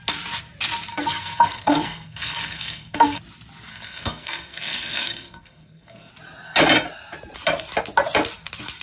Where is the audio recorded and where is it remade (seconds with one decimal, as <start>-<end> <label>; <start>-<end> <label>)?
0.0-0.9 recorded; 0.9-3.2 remade; 3.2-3.7 recorded; 3.7-6.1 remade; 6.1-8.8 recorded

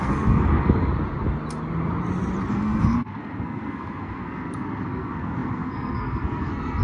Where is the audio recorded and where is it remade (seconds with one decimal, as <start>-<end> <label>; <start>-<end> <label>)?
0.0-0.9 remade; 0.9-2.5 recorded; 2.5-6.8 remade

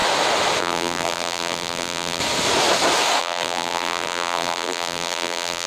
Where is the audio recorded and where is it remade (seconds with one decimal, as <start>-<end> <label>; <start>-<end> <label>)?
0.0-0.6 recorded; 0.6-2.2 remade; 2.2-3.2 recorded; 3.2-5.7 remade

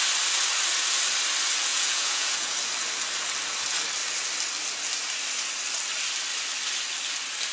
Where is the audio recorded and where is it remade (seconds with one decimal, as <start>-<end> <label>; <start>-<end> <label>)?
0.0-1.7 recorded; 1.7-2.6 remade; 2.6-7.5 recorded

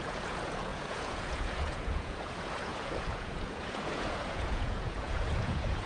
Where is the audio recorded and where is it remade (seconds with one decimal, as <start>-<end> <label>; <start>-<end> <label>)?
0.0-5.9 remade